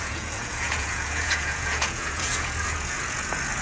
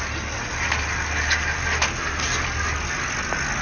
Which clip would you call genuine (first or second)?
second